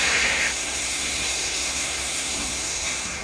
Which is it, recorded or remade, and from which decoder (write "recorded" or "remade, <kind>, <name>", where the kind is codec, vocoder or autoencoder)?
remade, codec, SNAC